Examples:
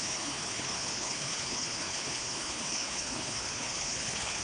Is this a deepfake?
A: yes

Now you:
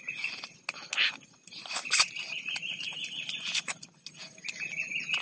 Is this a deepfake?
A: no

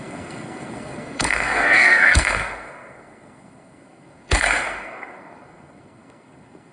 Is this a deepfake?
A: yes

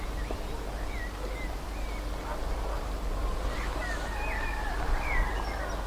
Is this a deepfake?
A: no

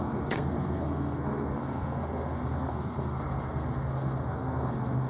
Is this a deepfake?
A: yes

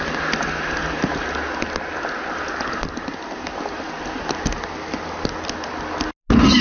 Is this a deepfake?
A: no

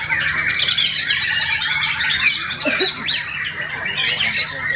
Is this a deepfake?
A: no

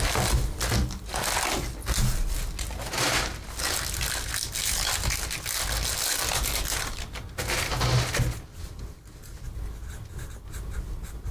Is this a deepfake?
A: no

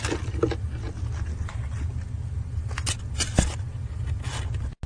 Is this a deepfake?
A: no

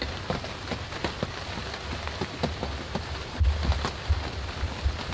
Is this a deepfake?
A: no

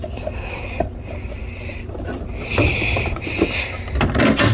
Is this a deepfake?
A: no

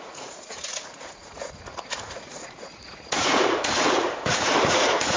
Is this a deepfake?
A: yes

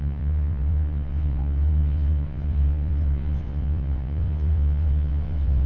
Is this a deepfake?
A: yes